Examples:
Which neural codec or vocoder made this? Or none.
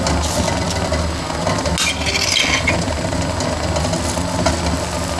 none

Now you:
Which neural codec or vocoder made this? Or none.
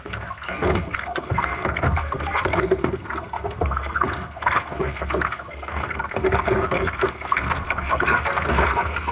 codec, SNAC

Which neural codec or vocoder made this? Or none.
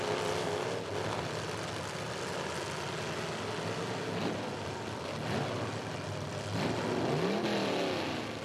none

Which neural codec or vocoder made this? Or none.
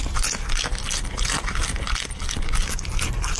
none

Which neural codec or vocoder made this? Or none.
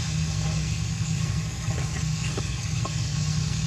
codec, SNAC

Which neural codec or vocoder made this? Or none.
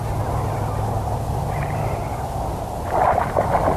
none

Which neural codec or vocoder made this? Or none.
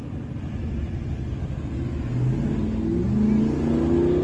none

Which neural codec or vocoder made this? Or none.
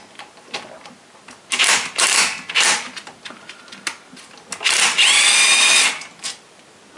none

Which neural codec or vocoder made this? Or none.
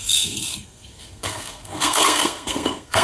codec, SNAC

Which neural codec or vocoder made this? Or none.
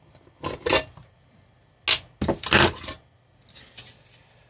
none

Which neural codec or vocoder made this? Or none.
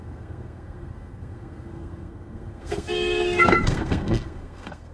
codec, SNAC